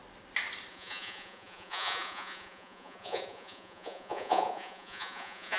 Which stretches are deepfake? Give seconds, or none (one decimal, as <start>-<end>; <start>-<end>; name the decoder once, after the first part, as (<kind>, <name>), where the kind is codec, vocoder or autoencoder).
0.7-5.6 (vocoder, Vocos)